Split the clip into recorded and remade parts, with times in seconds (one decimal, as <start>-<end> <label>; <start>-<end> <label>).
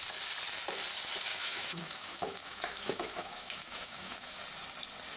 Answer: 0.0-1.3 recorded; 1.3-4.4 remade; 4.4-5.2 recorded